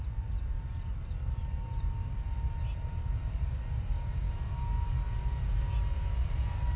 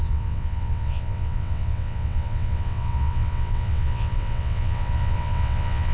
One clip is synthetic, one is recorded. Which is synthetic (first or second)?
second